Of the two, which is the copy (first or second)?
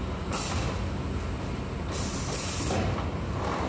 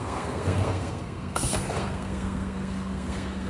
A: second